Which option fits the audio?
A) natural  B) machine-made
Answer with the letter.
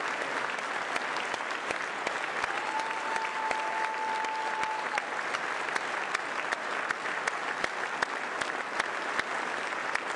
A